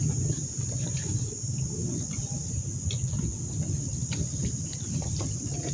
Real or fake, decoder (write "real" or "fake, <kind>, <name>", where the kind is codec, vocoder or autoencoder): real